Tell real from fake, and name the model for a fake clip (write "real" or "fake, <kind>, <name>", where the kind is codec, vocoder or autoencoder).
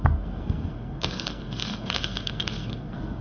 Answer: fake, codec, SNAC